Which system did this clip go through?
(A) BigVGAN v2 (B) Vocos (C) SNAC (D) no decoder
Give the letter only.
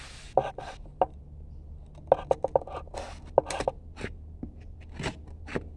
D